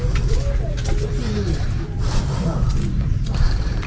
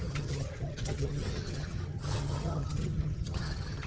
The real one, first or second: first